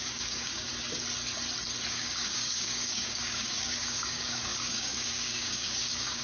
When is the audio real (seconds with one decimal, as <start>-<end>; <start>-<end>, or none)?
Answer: 0.7-1.9